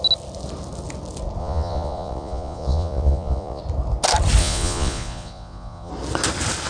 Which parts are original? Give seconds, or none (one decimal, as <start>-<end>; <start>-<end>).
0.0-1.4; 3.6-4.4; 5.9-6.7